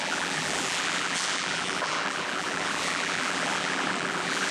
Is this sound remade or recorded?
remade